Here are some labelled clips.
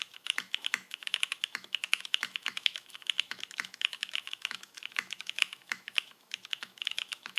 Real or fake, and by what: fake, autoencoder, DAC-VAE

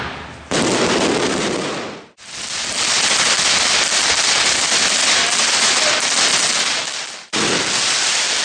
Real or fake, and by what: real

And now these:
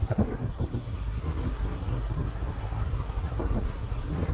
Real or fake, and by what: fake, codec, SNAC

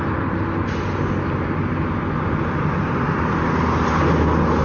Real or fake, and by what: real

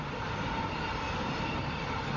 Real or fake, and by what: real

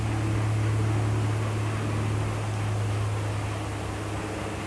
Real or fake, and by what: real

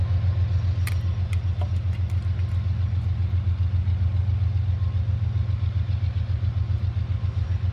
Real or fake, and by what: real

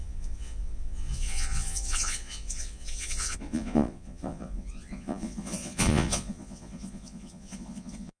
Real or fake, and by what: fake, vocoder, Vocos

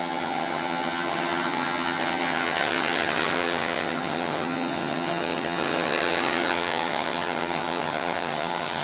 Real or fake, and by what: fake, vocoder, HiFi-GAN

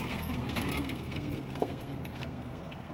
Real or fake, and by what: fake, codec, SNAC